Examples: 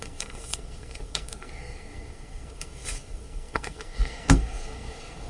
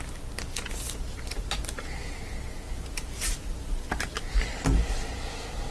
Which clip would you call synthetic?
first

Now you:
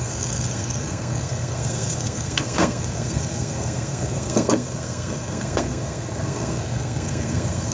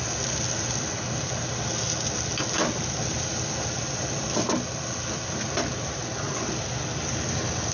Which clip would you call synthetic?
first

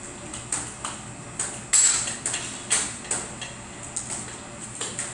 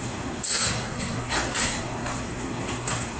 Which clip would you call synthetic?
second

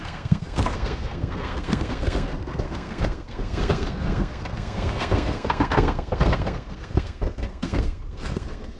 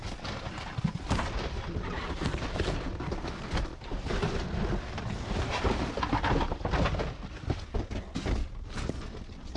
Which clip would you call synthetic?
first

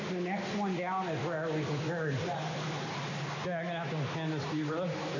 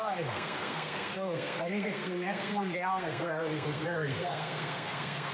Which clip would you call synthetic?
second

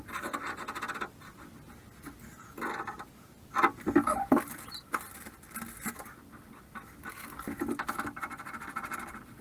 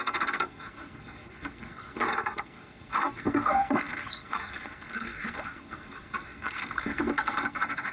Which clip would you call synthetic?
second